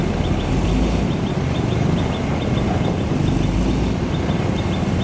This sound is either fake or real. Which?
real